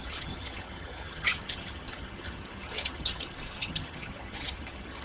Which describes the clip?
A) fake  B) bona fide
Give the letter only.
A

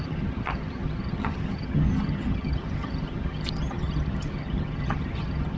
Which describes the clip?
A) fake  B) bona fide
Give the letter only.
A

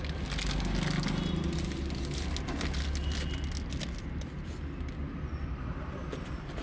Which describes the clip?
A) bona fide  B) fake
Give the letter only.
A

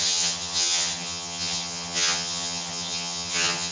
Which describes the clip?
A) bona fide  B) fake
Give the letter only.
B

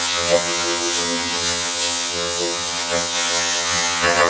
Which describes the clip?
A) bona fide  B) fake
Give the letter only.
B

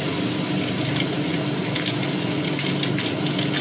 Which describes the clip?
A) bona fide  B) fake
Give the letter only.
A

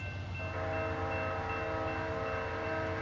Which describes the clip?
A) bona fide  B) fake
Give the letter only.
A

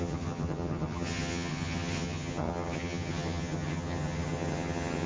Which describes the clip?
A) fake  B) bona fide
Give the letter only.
A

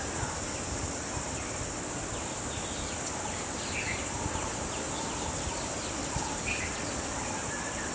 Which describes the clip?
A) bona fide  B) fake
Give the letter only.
A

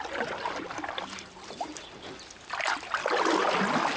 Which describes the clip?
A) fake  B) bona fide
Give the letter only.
B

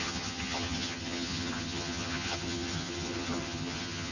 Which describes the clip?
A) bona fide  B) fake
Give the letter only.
B